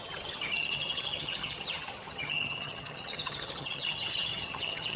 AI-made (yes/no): yes